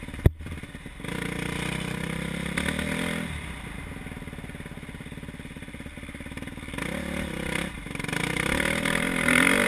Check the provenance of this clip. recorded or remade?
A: recorded